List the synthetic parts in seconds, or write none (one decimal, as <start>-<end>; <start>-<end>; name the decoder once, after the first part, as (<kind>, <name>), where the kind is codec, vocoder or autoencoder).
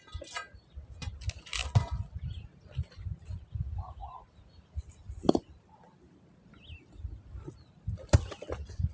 none